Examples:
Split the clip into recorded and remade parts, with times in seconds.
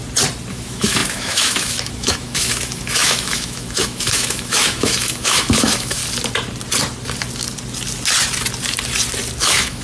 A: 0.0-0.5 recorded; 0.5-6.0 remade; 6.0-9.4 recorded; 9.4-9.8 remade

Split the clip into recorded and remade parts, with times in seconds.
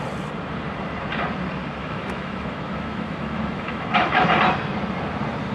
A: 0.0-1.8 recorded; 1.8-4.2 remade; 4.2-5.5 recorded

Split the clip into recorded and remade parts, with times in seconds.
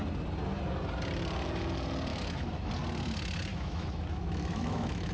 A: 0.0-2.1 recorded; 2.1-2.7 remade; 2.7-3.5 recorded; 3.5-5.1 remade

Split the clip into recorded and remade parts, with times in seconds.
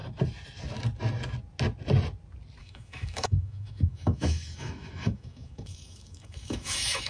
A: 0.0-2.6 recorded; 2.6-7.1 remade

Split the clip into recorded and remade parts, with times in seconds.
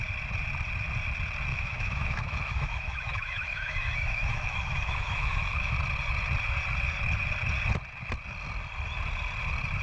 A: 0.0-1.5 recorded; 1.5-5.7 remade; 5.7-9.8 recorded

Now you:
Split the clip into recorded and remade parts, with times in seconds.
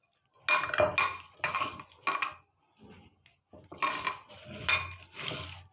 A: 0.0-5.7 recorded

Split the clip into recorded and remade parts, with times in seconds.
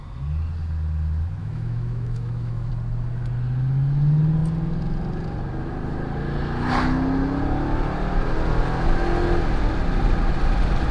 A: 0.0-1.4 recorded; 1.4-2.7 remade; 2.7-10.9 recorded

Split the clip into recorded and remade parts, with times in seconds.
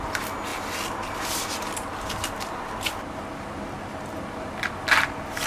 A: 0.0-5.5 recorded